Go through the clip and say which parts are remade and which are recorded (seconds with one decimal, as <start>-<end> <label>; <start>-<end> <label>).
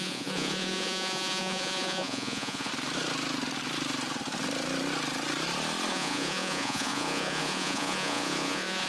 0.0-2.7 remade; 2.7-5.9 recorded; 5.9-8.9 remade